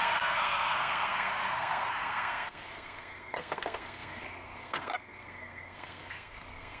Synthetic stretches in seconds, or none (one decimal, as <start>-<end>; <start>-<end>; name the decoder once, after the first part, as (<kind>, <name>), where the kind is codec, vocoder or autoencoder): 0.0-6.8 (codec, SNAC)